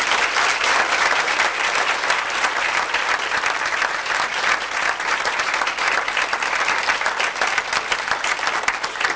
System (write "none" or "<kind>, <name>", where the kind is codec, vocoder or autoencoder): vocoder, BigVGAN v2